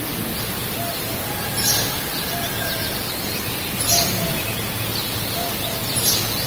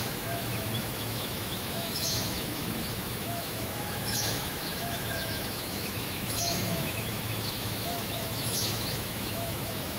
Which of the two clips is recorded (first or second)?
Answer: first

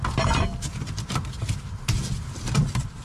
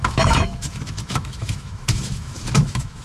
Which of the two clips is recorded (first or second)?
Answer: first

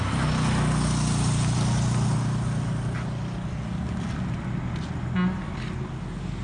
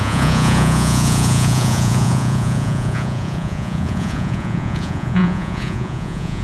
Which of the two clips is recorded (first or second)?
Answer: first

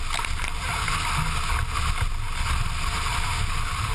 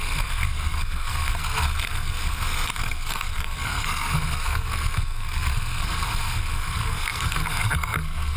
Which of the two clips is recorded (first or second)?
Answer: first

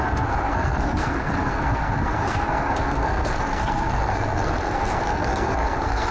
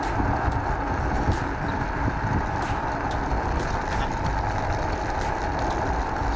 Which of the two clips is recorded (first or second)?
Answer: second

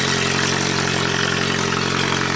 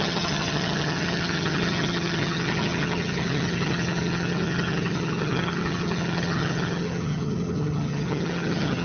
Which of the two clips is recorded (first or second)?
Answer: first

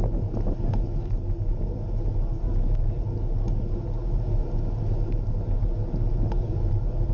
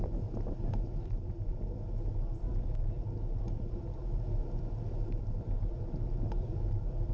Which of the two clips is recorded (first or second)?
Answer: first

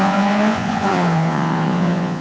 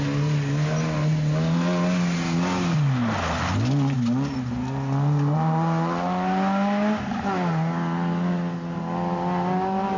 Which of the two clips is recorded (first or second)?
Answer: second